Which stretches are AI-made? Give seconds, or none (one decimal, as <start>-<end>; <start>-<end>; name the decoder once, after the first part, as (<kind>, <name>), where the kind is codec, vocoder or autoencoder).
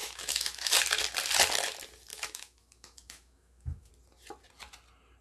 0.0-0.7 (autoencoder, DAC-VAE); 2.1-3.9